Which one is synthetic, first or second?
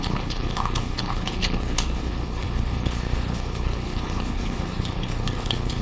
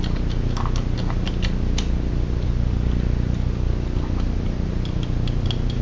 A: first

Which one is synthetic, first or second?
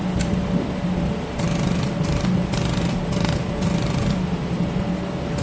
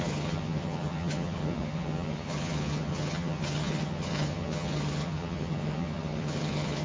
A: second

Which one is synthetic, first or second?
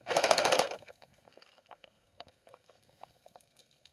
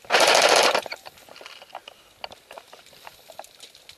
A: first